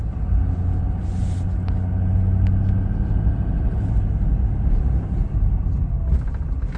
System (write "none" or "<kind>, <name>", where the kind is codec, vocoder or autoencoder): none